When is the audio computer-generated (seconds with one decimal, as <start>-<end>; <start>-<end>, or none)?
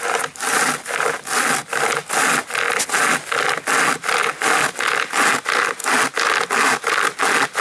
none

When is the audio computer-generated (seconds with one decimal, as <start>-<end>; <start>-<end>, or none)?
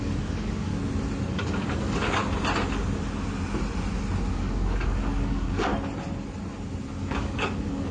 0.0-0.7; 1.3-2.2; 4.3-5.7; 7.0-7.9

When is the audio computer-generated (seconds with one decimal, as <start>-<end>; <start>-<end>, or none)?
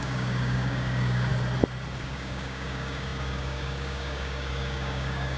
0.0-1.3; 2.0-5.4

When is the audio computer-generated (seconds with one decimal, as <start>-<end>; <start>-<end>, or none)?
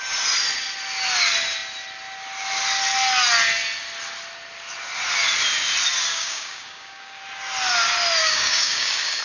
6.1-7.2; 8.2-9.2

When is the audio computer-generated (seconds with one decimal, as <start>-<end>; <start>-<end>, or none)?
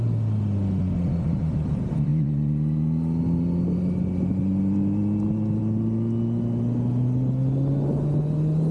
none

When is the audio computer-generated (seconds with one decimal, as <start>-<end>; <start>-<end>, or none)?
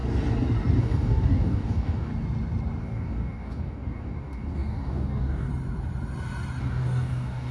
0.8-2.1; 2.8-5.5; 6.6-7.5